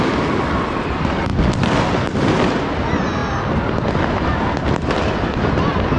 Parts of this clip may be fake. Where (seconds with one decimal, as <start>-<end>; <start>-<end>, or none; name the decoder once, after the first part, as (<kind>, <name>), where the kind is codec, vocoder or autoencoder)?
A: none